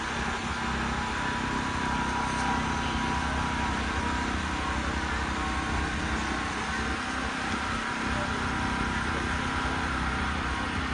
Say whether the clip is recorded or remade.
recorded